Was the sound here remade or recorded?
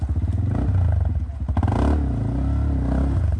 recorded